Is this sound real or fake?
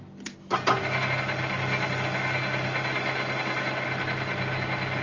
real